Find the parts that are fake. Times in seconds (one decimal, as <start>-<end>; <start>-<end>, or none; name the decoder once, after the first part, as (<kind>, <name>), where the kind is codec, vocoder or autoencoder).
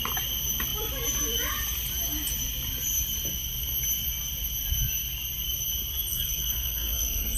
6.1-7.4 (codec, SNAC)